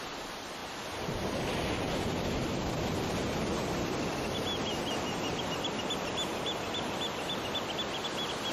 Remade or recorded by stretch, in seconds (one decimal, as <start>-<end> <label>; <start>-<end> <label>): 0.0-8.5 recorded